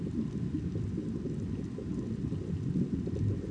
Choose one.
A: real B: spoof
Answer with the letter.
A